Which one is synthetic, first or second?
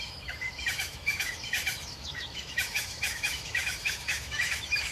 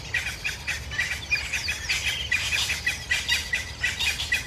first